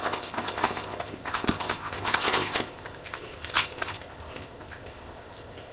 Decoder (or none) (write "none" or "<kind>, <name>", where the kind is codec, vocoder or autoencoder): codec, ZipCodec